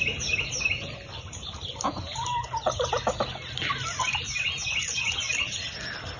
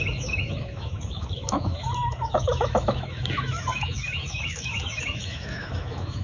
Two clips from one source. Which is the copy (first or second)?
second